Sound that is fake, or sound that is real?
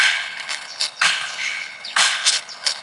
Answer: fake